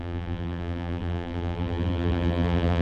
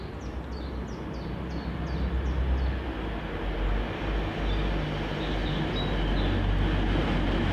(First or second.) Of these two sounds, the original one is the second